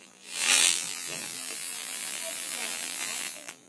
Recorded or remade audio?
remade